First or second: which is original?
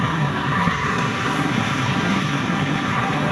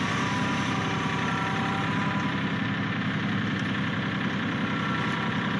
second